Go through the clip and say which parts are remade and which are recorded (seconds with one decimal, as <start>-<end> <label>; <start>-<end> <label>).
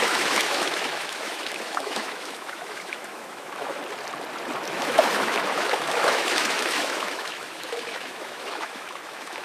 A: 0.0-3.8 remade; 3.8-4.7 recorded; 4.7-9.4 remade